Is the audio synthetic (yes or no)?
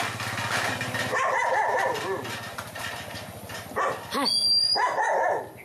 no